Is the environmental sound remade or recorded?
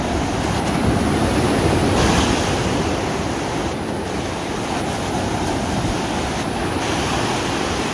recorded